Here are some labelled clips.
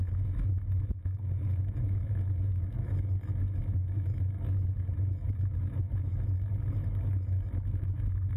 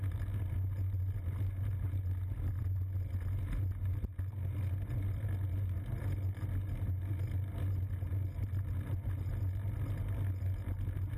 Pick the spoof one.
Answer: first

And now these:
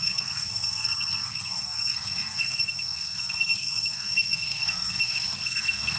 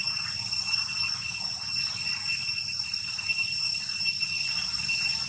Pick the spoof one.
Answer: first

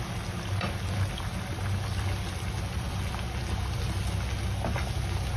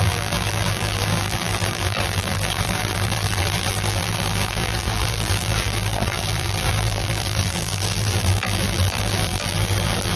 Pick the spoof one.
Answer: second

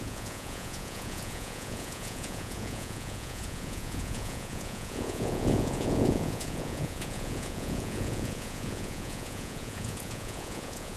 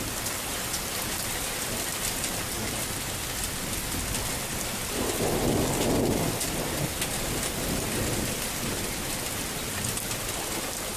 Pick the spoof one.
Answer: first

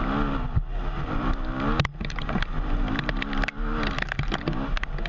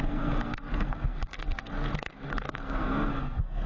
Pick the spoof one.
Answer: second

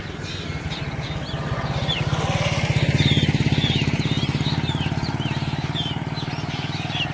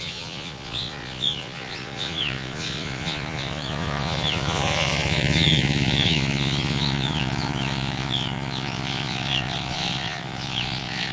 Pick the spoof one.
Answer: second